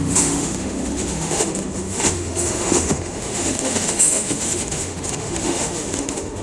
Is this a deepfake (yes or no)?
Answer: yes